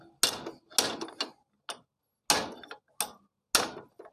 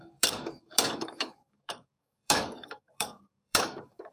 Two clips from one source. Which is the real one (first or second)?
first